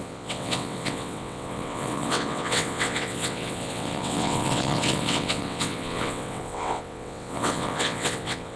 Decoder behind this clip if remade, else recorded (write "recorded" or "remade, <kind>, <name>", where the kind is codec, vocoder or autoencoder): remade, vocoder, WaveNeXt